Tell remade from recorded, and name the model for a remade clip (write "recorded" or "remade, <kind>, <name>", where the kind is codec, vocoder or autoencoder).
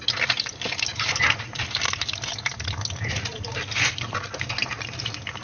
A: recorded